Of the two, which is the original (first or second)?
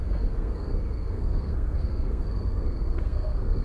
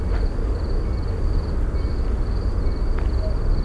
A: second